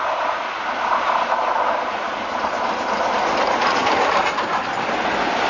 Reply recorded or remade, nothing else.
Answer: recorded